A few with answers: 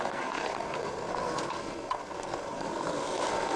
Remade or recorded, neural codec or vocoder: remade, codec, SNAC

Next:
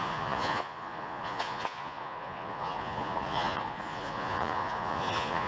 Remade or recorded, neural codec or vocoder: remade, vocoder, Vocos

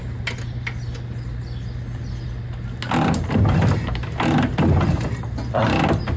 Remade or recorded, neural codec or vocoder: recorded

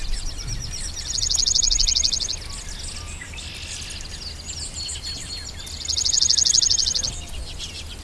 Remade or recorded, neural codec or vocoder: recorded